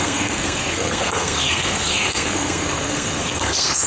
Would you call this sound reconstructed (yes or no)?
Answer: yes